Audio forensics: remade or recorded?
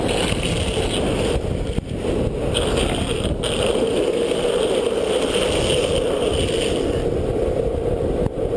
recorded